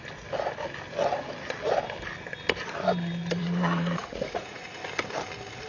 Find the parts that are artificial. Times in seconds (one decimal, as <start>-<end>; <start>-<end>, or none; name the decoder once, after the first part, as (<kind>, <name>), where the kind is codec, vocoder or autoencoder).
3.4-4.8 (vocoder, Vocos)